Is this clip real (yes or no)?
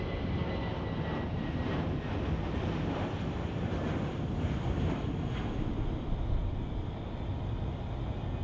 yes